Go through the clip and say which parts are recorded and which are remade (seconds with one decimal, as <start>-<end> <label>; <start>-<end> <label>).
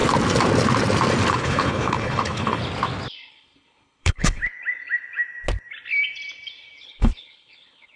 0.0-1.3 recorded; 1.3-2.6 remade; 2.6-3.3 recorded; 3.3-4.4 remade; 4.4-6.8 recorded; 6.8-8.0 remade